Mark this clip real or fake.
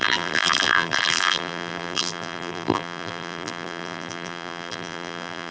fake